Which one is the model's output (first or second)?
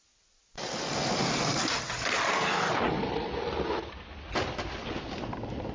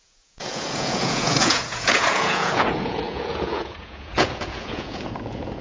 second